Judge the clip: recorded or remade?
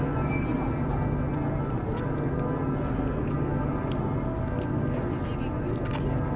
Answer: recorded